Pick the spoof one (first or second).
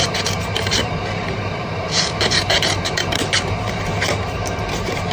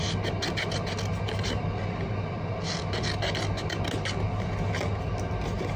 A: first